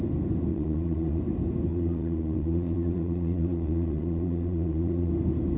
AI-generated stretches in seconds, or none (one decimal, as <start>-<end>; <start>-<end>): 0.5-1.2; 1.7-5.1